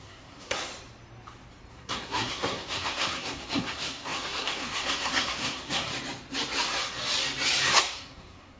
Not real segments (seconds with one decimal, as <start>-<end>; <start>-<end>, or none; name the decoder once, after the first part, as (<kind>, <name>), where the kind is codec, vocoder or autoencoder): 0.0-0.7 (codec, SNAC); 1.7-5.9; 7.8-8.6

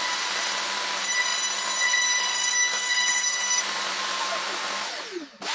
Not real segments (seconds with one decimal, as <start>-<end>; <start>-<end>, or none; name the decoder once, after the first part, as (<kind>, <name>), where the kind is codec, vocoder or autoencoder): 2.3-3.6 (codec, SNAC)

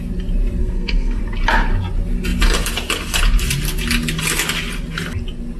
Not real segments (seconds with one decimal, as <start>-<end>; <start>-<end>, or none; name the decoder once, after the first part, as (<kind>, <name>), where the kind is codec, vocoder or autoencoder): 0.6-1.2 (codec, SNAC)

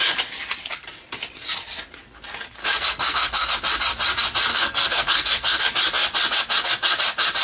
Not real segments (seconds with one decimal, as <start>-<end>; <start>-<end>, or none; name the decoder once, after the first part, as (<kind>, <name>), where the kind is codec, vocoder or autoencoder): 2.6-3.5 (codec, SNAC); 4.5-5.6

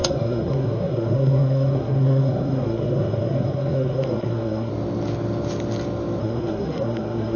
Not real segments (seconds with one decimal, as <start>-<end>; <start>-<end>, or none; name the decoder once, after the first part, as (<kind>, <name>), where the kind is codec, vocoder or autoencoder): 0.0-4.7 (codec, SNAC); 6.2-7.4